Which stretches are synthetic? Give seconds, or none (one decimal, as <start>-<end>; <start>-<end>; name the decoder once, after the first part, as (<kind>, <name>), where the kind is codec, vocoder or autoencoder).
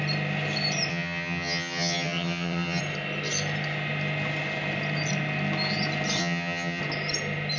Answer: 0.9-2.8 (vocoder, HiFi-GAN); 6.2-6.8